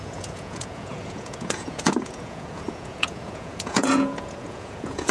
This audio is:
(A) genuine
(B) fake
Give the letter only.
B